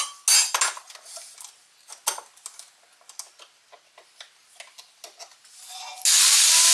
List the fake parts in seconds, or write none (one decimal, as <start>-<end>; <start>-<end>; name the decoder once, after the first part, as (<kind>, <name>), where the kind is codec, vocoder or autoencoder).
none